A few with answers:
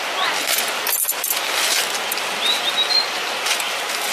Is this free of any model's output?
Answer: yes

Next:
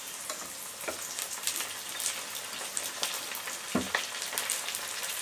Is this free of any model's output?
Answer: yes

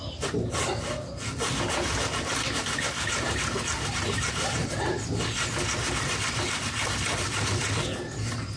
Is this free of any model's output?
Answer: yes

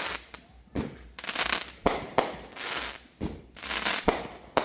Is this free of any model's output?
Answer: yes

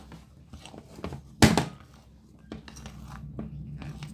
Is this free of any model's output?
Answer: yes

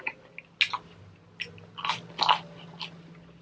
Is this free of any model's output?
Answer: yes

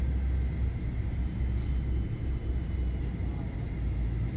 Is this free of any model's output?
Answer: yes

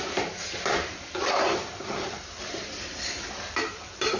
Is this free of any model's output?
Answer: no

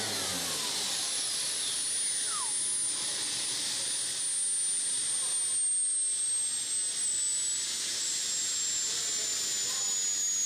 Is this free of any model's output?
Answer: yes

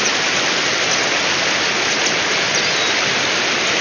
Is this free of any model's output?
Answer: yes